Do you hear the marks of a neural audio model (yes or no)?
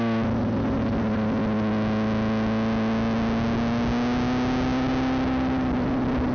no